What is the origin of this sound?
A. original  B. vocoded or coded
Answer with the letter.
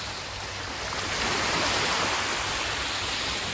A